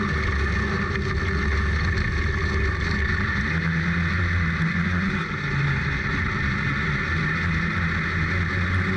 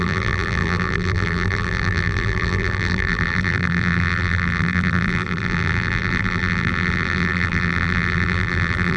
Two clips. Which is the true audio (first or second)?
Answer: first